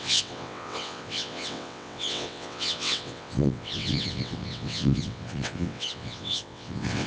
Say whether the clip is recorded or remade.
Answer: remade